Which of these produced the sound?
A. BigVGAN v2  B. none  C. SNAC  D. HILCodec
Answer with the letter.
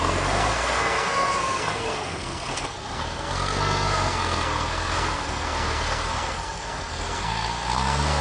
C